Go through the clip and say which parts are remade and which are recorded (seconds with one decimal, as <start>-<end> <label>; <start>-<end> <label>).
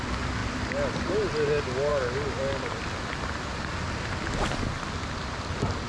0.0-5.9 recorded